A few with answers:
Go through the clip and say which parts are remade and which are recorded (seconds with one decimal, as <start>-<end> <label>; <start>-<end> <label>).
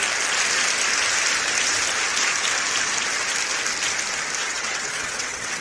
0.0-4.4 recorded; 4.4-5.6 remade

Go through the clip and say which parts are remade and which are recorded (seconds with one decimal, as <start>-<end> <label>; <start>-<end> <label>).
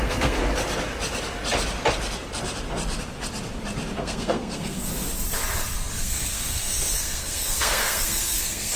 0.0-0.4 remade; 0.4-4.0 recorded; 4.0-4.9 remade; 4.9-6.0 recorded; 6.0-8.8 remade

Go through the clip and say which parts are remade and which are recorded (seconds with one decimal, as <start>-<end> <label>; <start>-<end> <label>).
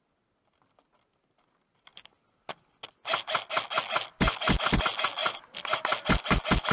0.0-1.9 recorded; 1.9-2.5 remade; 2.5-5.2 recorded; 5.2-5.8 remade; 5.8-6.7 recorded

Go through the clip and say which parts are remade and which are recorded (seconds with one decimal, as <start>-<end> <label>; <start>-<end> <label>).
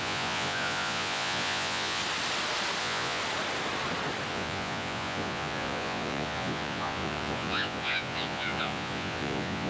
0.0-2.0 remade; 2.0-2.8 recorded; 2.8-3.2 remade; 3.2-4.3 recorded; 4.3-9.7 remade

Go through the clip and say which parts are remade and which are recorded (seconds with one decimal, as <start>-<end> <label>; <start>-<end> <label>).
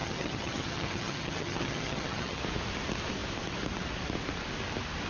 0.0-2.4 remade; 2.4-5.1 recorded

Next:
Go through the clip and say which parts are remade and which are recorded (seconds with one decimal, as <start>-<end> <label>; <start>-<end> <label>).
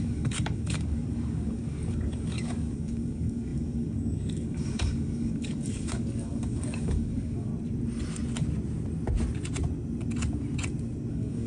0.0-7.5 remade; 7.5-11.1 recorded; 11.1-11.5 remade